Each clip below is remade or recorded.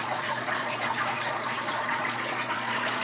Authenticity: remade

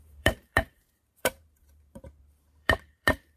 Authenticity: remade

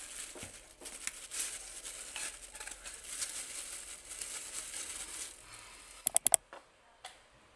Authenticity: recorded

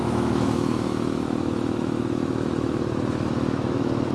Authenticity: remade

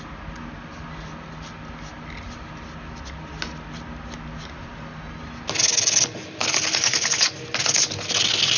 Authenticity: recorded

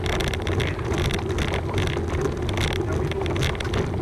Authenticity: recorded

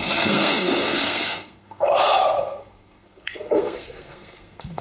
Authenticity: remade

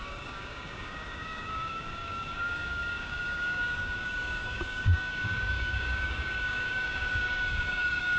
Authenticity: remade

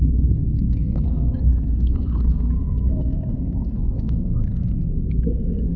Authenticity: remade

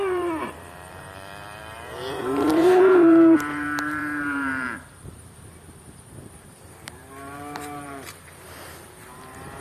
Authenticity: remade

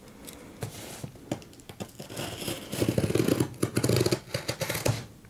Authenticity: recorded